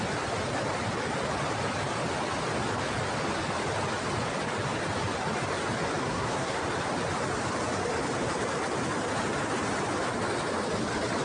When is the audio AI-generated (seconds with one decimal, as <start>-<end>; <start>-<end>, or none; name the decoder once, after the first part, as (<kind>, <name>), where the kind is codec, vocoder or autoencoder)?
6.0-6.6 (codec, SNAC)